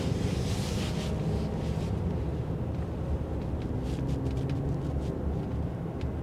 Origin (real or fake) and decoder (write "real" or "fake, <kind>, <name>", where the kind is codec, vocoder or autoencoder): real